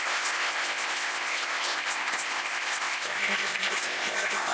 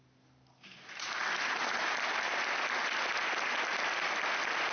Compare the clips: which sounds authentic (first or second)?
second